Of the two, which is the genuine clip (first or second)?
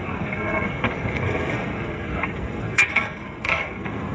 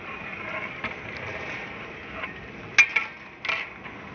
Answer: second